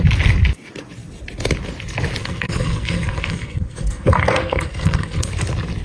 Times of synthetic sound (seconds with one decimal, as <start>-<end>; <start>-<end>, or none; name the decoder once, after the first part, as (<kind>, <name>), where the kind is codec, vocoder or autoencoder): 2.2-5.3 (codec, SNAC)